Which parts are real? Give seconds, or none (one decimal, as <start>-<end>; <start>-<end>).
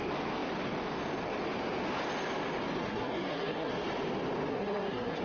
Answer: 0.0-2.8; 3.7-4.5